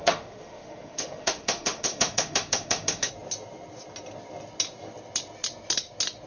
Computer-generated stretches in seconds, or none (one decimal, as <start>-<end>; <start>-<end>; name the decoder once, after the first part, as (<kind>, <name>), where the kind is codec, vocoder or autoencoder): 0.0-3.1 (autoencoder, DAC-VAE)